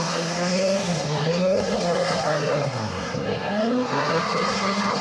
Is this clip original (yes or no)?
no